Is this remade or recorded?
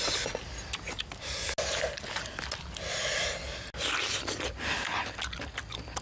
recorded